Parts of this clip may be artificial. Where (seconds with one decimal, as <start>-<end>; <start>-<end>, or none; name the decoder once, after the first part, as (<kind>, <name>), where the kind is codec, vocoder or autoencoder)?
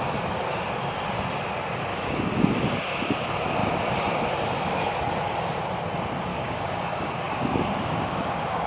1.9-2.4 (codec, DAC); 6.3-8.7